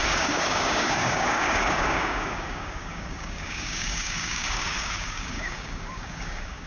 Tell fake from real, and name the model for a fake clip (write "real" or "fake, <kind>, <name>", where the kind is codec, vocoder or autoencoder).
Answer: fake, codec, DAC